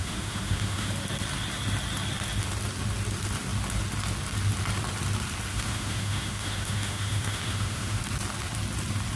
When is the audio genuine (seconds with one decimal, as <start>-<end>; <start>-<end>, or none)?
0.9-5.5; 8.0-9.2